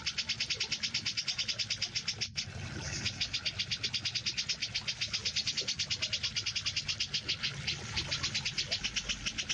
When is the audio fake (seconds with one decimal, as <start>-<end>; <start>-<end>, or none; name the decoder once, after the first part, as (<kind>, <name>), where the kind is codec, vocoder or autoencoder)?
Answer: none